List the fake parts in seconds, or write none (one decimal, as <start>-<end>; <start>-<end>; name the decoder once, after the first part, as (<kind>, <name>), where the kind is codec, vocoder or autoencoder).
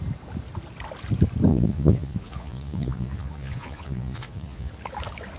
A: 1.5-4.7 (vocoder, Vocos)